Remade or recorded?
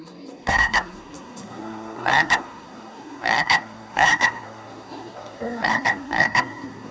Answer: remade